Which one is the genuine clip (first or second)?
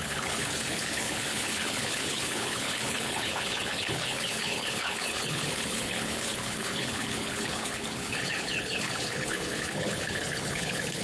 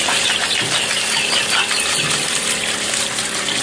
second